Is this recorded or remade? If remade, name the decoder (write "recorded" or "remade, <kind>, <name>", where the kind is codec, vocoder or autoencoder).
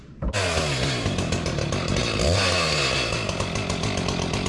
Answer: recorded